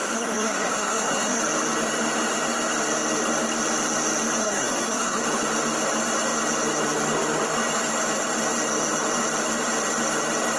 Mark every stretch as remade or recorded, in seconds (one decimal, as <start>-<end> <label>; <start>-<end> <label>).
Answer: 0.0-1.4 remade; 1.4-4.4 recorded; 4.4-5.2 remade; 5.2-10.6 recorded